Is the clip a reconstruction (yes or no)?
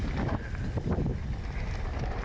no